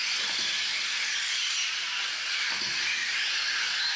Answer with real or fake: real